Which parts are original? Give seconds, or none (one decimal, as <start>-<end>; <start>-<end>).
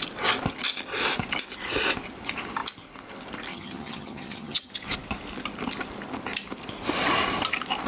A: 0.0-3.5; 4.7-7.9